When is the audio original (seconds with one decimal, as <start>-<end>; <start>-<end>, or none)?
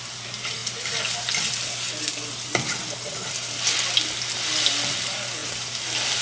0.0-6.2